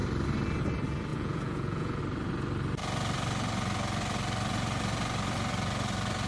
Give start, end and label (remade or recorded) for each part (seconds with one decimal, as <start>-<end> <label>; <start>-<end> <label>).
0.0-1.1 recorded; 1.1-2.0 remade; 2.0-6.3 recorded